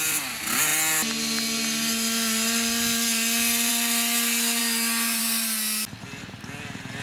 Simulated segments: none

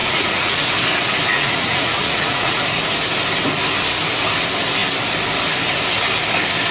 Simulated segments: 0.0-0.7 (vocoder, Vocos); 1.3-2.6

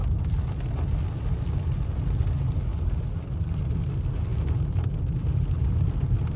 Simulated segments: none

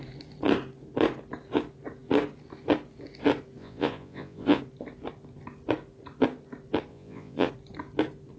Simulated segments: 3.6-4.6 (vocoder, Vocos); 6.9-7.5

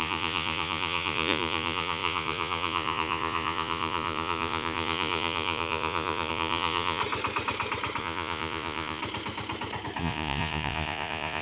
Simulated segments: 0.0-7.0 (vocoder, Vocos); 8.0-9.0; 10.0-11.4

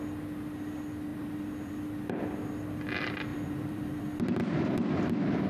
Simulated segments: 1.1-1.7 (vocoder, BigVGAN v2); 3.3-4.4